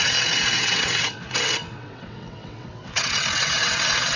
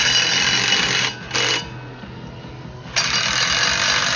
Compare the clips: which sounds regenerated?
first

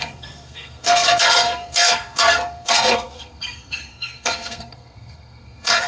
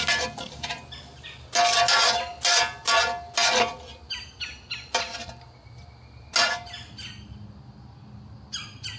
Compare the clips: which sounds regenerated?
first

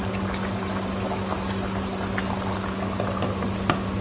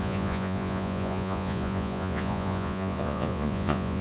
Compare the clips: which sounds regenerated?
second